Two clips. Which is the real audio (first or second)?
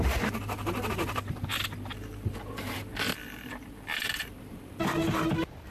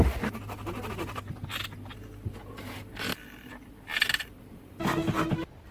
second